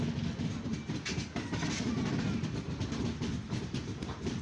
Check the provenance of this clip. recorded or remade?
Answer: recorded